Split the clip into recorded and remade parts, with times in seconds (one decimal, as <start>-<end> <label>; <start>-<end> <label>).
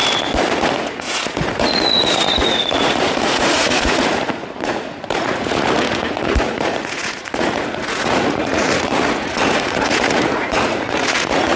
0.0-0.5 recorded; 0.5-11.6 remade